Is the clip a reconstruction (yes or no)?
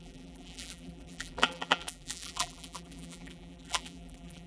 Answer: yes